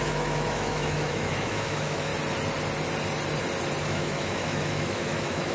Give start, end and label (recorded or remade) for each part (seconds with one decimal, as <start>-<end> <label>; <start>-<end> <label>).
0.0-2.1 remade; 2.1-3.8 recorded; 3.8-5.5 remade